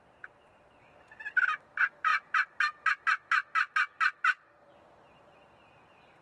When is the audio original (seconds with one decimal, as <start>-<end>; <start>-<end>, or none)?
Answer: 0.0-6.2